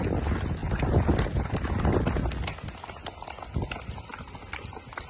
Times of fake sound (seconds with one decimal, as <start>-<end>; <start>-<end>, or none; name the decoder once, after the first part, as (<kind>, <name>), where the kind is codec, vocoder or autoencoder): none